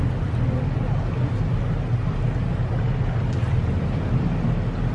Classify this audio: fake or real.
real